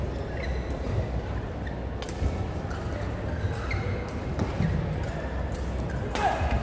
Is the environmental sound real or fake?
real